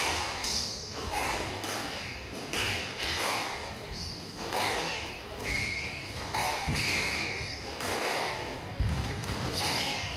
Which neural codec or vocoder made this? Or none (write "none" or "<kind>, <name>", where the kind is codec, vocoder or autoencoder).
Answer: codec, DAC